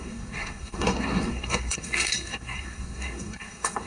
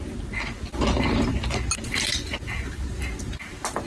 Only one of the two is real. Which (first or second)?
second